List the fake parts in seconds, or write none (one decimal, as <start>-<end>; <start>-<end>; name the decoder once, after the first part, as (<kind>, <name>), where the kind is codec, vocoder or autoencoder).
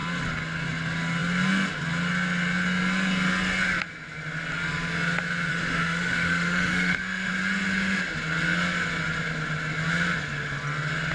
5.5-7.3 (autoencoder, DAC-VAE)